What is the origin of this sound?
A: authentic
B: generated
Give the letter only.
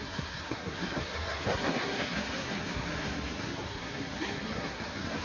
B